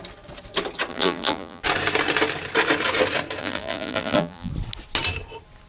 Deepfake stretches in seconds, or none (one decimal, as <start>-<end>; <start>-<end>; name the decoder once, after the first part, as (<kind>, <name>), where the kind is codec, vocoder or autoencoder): 0.9-1.6 (vocoder, BigVGAN v2); 3.4-4.5